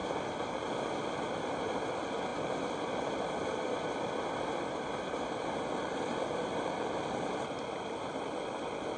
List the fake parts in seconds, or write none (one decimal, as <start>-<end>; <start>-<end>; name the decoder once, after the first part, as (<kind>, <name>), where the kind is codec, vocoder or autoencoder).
none